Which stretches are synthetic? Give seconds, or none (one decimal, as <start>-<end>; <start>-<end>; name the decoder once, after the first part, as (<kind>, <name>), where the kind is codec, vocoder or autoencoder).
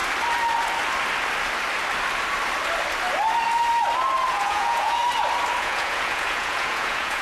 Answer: 4.3-5.0 (vocoder, Vocos); 5.6-7.2